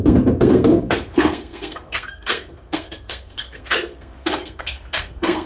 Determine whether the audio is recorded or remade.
remade